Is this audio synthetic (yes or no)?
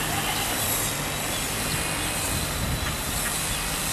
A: no